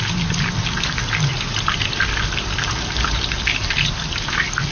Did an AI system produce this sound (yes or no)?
no